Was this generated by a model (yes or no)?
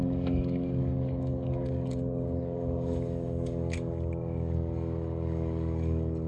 yes